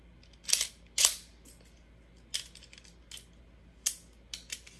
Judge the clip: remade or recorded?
recorded